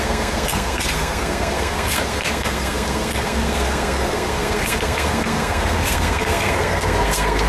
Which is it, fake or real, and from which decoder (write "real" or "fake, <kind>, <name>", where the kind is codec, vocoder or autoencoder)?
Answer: fake, codec, SNAC